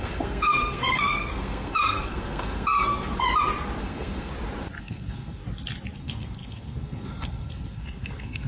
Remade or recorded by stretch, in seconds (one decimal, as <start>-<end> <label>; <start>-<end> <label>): 0.0-3.1 remade; 3.1-3.8 recorded; 3.8-4.3 remade; 4.3-4.8 recorded; 4.8-5.4 remade; 5.4-6.0 recorded; 6.0-8.5 remade